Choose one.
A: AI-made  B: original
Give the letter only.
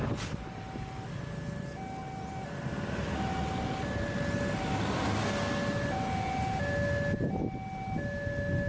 B